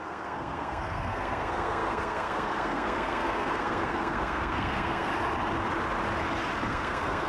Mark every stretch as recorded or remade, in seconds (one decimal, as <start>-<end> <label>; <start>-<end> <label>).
0.0-5.1 remade; 5.1-6.6 recorded; 6.6-7.3 remade